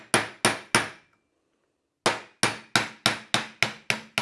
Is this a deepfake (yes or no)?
no